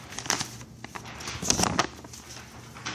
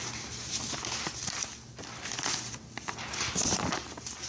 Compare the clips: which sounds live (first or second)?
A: first